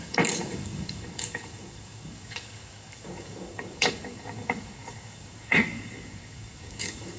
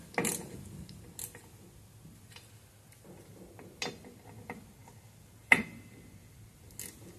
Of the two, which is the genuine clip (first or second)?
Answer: second